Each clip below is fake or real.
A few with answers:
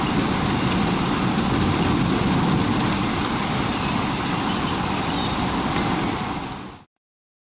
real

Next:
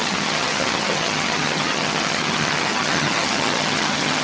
fake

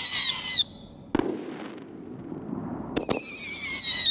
real